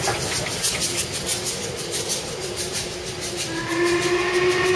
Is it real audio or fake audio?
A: real